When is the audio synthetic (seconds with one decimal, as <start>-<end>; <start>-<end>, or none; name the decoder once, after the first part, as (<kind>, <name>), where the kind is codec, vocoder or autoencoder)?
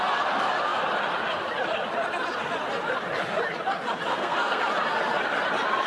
4.1-4.6 (codec, SNAC)